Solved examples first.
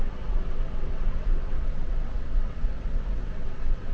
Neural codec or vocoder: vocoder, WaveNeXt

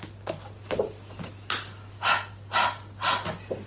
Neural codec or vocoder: none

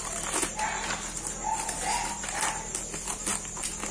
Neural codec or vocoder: none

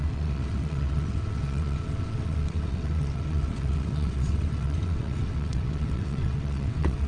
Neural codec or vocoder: vocoder, WaveNeXt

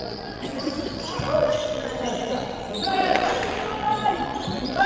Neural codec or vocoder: vocoder, WaveNeXt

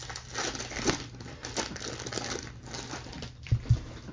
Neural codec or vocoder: none